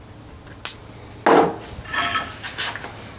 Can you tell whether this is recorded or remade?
recorded